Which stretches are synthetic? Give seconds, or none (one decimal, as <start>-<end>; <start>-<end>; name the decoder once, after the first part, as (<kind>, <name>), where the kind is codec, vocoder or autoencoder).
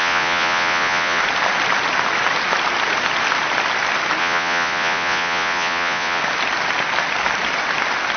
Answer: 0.0-1.2 (vocoder, Vocos); 4.2-6.2